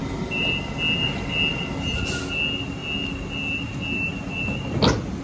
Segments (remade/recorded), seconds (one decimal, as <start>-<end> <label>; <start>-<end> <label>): 0.0-0.5 remade; 0.5-5.2 recorded